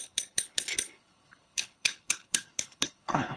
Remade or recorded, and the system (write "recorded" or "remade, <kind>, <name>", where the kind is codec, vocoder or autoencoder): remade, codec, HILCodec